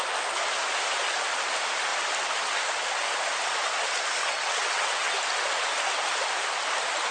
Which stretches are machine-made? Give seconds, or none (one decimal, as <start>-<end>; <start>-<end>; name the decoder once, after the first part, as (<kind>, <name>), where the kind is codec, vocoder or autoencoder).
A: 4.2-5.1 (vocoder, WaveNeXt)